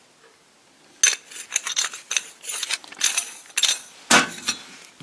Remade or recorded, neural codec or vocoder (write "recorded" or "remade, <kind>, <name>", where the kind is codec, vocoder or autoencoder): recorded